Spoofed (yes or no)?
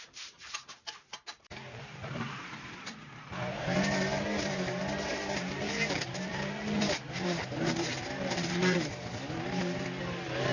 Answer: yes